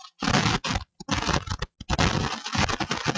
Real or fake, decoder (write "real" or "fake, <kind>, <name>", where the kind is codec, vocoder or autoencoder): real